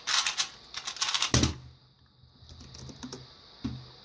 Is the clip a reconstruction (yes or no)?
no